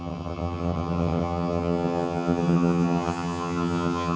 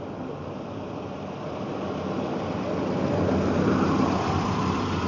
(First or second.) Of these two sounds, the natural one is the second